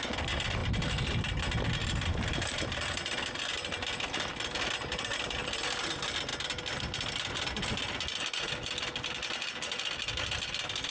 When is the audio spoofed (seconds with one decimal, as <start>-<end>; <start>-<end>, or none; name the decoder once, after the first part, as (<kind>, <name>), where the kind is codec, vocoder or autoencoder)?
1.8-2.9 (vocoder, BigVGAN v2)